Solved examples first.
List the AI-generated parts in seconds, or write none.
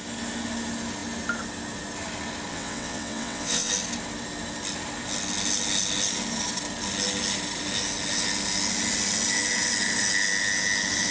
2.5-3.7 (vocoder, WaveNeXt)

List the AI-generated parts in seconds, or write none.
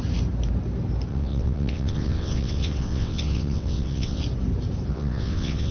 1.1-4.2 (vocoder, WaveNeXt); 4.9-5.7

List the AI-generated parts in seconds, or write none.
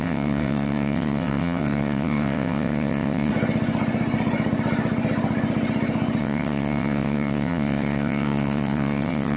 0.0-3.3 (vocoder, WaveNeXt); 6.2-9.4